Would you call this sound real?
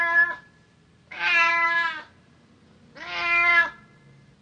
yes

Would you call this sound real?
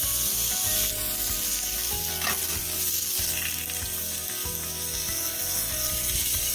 yes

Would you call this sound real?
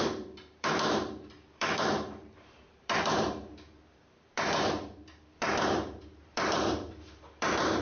no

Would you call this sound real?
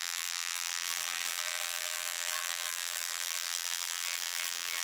no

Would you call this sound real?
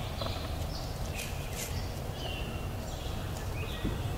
yes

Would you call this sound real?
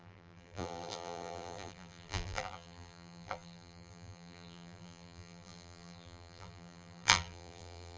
no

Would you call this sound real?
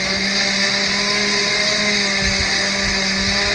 yes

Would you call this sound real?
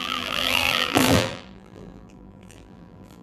no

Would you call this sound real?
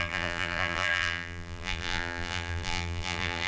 no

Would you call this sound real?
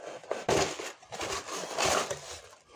yes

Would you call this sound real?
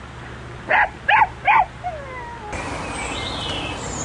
yes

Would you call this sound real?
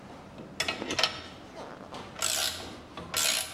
yes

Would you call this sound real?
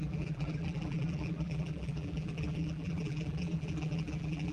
no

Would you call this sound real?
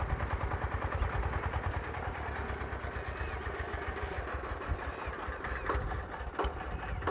yes